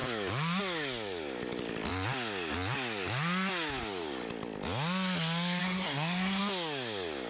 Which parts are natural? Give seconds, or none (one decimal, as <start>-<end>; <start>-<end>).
0.0-5.6; 6.4-7.3